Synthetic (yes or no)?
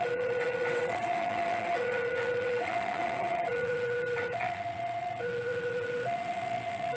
yes